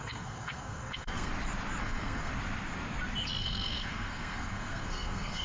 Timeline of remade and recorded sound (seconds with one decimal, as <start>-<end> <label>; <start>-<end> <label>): 0.0-1.3 remade; 1.3-1.8 recorded; 1.8-2.3 remade; 2.3-3.4 recorded; 3.4-5.4 remade